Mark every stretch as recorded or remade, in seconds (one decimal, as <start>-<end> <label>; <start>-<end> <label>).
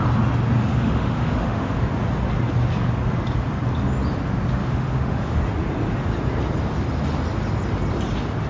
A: 0.0-0.7 recorded; 0.7-1.9 remade; 1.9-4.6 recorded; 4.6-5.4 remade; 5.4-8.5 recorded